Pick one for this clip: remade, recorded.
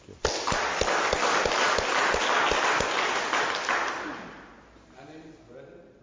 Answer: recorded